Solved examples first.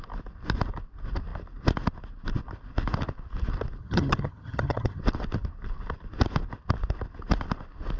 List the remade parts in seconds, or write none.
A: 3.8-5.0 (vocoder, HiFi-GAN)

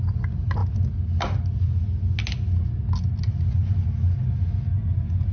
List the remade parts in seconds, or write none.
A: none

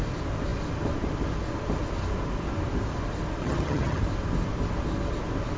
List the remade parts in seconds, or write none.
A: 3.4-4.0 (vocoder, HiFi-GAN)